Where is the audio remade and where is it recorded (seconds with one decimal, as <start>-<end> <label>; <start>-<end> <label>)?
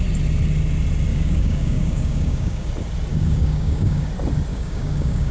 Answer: 0.0-1.1 recorded; 1.1-2.7 remade; 2.7-3.1 recorded; 3.1-4.1 remade; 4.1-4.5 recorded; 4.5-5.3 remade